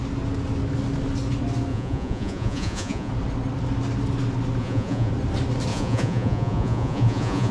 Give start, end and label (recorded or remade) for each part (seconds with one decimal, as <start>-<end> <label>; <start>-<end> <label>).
0.0-1.7 recorded; 1.7-3.1 remade; 3.1-4.6 recorded; 4.6-5.1 remade; 5.1-5.7 recorded; 5.7-7.5 remade